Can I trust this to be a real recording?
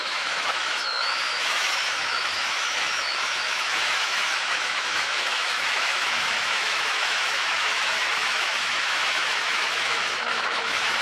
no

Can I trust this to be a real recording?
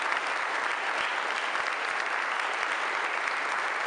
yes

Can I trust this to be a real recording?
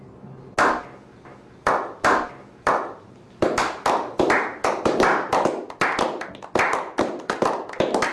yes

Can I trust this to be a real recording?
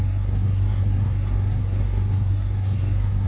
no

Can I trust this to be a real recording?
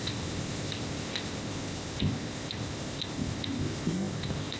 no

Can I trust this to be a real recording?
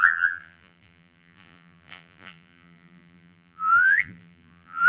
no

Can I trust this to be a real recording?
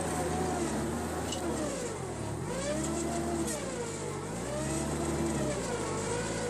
yes